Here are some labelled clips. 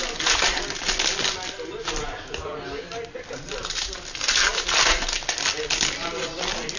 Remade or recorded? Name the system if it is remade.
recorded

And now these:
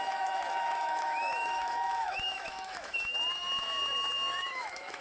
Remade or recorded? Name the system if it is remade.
remade, autoencoder, DAC-VAE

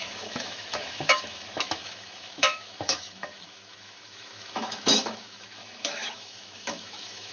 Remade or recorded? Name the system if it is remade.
remade, autoencoder, DAC-VAE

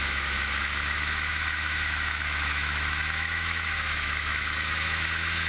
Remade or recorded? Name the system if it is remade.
remade, autoencoder, DAC-VAE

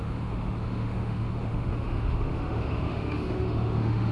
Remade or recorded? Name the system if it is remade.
remade, autoencoder, DAC-VAE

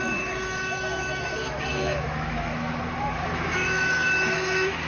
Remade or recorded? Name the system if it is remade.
remade, autoencoder, DAC-VAE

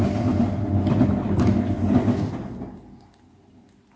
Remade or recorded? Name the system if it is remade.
recorded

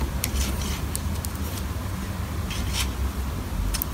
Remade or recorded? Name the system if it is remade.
recorded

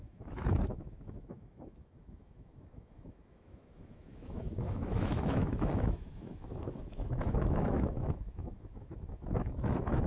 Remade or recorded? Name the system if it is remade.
remade, autoencoder, DAC-VAE